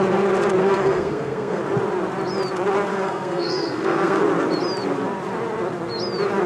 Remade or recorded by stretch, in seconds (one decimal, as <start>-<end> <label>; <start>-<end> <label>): 0.0-0.6 recorded; 0.6-1.6 remade; 1.6-2.9 recorded; 2.9-4.2 remade; 4.2-6.5 recorded